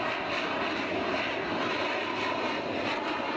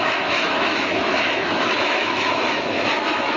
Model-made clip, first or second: second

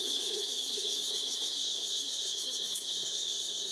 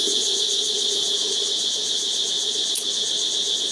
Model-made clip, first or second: first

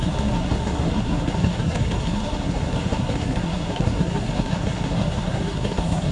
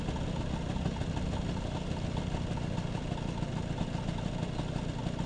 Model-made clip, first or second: first